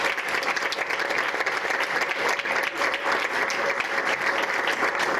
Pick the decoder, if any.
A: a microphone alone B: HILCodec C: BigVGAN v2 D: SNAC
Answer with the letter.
C